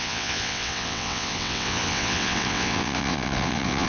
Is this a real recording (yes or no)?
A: no